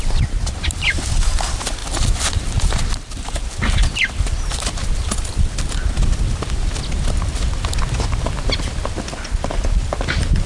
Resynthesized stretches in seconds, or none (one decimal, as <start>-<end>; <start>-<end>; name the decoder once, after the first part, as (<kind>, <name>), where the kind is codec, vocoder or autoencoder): 1.8-4.4 (vocoder, BigVGAN v2)